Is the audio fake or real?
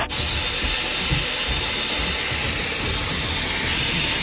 real